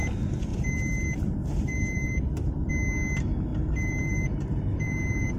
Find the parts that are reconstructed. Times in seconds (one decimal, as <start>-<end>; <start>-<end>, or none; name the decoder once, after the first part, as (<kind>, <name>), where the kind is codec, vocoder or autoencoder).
0.5-2.7 (vocoder, BigVGAN v2); 3.5-5.4